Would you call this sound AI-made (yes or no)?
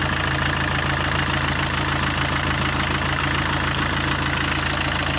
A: no